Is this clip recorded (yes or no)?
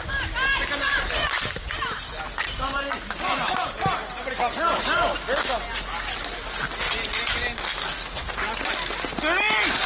yes